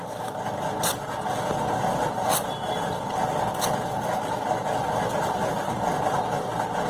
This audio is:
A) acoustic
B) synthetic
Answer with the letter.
A